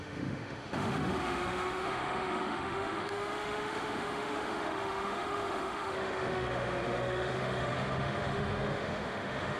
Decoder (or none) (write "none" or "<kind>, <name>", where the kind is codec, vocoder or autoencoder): autoencoder, DAC-VAE